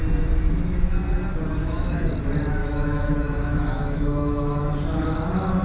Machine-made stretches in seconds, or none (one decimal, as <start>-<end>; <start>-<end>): 1.6-2.1; 2.6-4.7